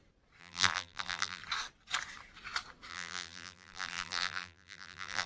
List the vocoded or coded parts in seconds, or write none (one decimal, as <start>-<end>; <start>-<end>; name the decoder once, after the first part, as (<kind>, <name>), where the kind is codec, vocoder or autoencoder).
0.4-1.4 (vocoder, BigVGAN v2); 2.9-5.3